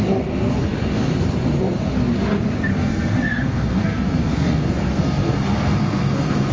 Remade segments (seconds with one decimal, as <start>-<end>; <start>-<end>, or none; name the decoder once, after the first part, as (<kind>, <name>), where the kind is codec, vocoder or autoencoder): 2.7-6.5 (codec, SNAC)